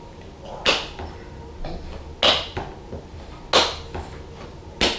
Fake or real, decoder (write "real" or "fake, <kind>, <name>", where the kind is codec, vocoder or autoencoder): real